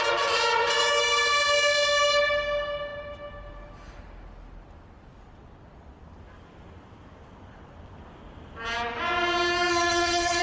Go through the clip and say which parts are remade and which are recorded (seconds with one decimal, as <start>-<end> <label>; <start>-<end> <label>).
0.0-9.7 recorded; 9.7-10.4 remade